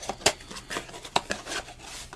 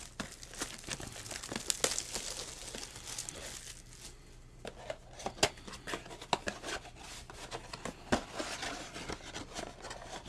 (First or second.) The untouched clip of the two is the second